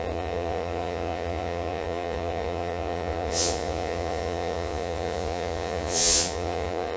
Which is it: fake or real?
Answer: fake